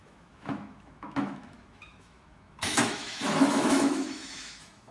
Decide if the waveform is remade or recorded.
remade